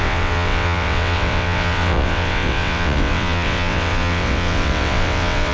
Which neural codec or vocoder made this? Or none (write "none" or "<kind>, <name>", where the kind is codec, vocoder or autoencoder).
vocoder, WaveNeXt